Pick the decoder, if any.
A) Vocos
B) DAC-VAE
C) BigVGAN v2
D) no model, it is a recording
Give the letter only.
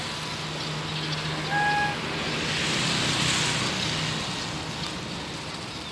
D